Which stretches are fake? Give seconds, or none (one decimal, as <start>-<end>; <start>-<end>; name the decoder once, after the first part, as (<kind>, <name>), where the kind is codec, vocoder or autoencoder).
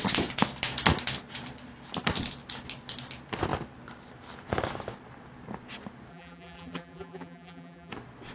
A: 6.1-7.9 (vocoder, BigVGAN v2)